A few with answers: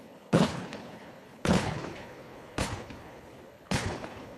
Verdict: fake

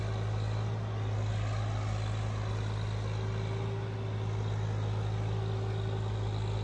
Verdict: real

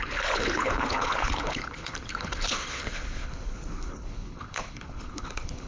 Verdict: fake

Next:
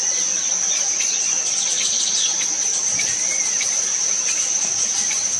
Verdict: fake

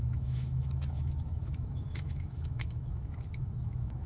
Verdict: fake